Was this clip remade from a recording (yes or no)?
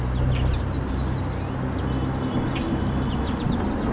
no